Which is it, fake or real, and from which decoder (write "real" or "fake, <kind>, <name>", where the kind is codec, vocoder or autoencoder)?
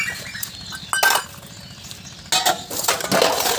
real